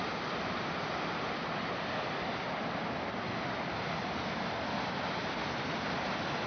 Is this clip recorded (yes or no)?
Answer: yes